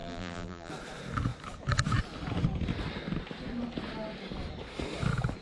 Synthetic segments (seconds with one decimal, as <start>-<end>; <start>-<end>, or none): 0.0-0.7